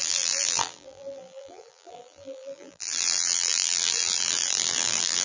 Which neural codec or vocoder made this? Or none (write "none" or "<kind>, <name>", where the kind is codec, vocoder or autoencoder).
vocoder, BigVGAN v2